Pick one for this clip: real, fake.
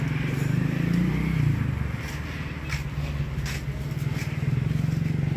real